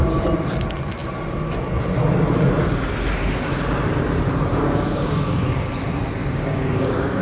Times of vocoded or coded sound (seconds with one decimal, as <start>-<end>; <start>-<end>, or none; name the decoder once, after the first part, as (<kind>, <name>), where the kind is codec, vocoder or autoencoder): 4.5-5.7 (codec, DAC); 6.2-7.2